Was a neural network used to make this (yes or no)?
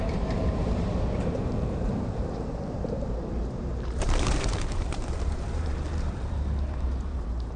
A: yes